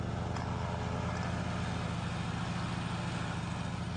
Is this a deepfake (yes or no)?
no